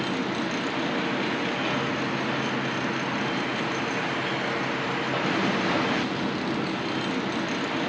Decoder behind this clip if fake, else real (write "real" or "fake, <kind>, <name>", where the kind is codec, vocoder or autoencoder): real